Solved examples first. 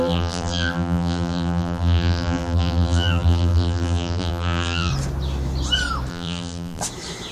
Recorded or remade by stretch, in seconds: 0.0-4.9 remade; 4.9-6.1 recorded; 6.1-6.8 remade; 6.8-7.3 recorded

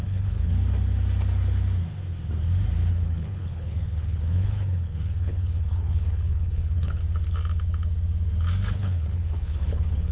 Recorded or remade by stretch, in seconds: 0.0-0.5 remade; 0.5-2.9 recorded; 2.9-7.0 remade; 7.0-8.7 recorded; 8.7-10.1 remade

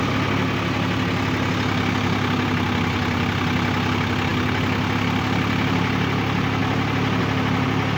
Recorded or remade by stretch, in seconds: 0.0-8.0 recorded

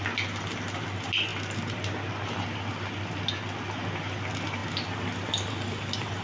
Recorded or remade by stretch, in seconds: 0.0-6.2 recorded

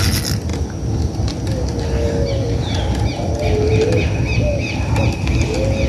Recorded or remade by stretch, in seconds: 0.0-5.9 recorded

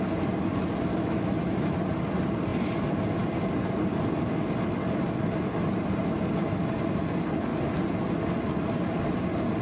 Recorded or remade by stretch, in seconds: 0.0-0.9 recorded; 0.9-1.7 remade; 1.7-9.6 recorded

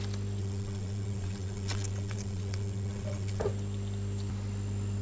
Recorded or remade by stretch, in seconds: 0.0-0.4 recorded; 0.4-3.4 remade; 3.4-5.0 recorded